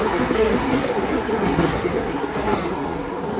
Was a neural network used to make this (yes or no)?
yes